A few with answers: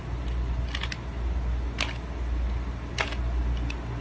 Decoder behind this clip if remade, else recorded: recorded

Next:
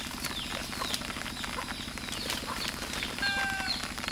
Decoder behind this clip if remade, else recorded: recorded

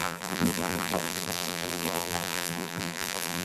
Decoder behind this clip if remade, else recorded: remade, vocoder, BigVGAN v2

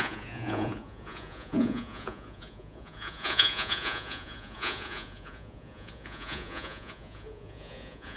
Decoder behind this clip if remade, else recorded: remade, vocoder, Vocos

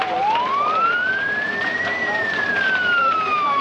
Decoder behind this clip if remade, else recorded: remade, vocoder, BigVGAN v2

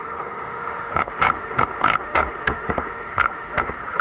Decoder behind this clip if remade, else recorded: remade, autoencoder, DAC-VAE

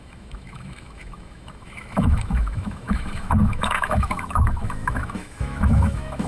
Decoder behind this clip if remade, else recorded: remade, autoencoder, DAC-VAE